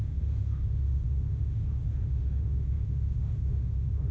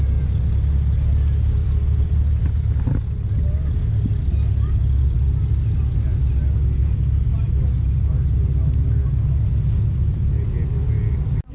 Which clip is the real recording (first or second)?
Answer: second